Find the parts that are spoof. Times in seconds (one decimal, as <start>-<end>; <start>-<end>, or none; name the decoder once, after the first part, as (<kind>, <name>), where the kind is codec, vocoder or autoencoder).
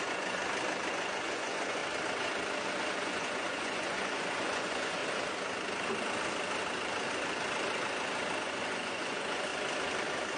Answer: 0.0-0.4 (vocoder, Vocos); 0.9-1.8; 3.0-5.0; 8.4-9.5